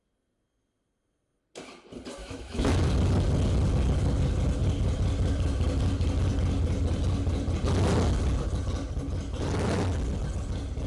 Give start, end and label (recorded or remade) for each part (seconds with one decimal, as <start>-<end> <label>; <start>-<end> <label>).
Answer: 0.0-2.2 recorded; 2.2-2.9 remade; 2.9-10.9 recorded